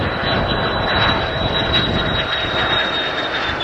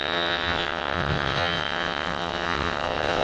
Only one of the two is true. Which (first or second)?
first